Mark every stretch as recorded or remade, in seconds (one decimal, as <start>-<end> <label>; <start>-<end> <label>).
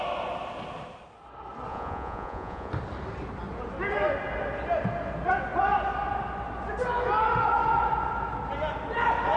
0.0-1.7 recorded; 1.7-2.7 remade; 2.7-9.4 recorded